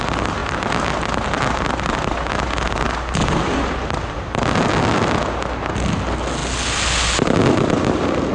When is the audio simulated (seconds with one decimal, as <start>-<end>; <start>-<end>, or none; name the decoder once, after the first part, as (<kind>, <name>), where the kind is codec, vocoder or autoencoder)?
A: none